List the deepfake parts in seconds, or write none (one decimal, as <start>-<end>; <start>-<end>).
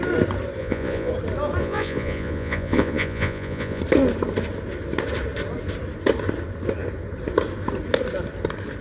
0.6-1.1; 1.6-3.8